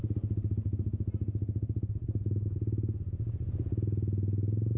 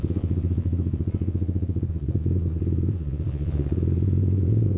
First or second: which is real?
first